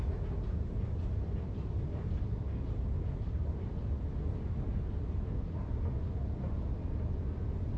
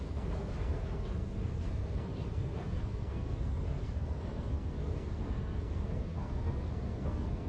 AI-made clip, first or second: second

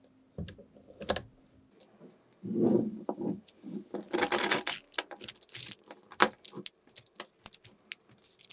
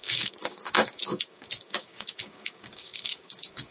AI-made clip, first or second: second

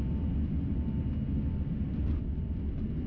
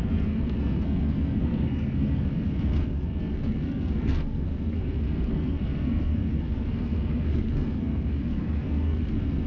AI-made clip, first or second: second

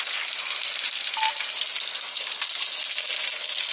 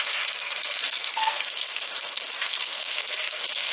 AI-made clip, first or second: second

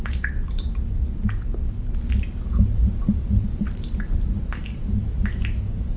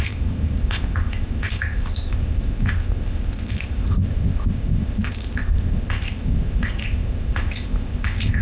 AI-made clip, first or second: second